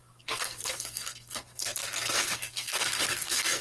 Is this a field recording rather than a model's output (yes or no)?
no